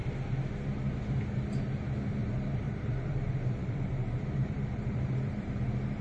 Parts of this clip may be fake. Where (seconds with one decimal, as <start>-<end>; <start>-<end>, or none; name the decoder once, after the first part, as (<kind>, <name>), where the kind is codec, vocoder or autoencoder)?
2.2-6.0 (vocoder, BigVGAN v2)